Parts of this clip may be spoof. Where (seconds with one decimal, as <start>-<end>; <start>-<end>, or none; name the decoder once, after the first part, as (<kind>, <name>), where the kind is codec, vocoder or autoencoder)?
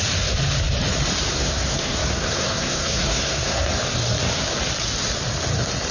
1.3-3.7 (codec, SNAC)